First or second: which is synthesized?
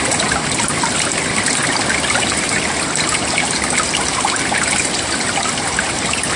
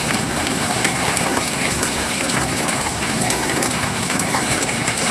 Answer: second